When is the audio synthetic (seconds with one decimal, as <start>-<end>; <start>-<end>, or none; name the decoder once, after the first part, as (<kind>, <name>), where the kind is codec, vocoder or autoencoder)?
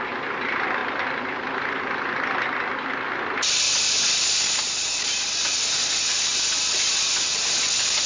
none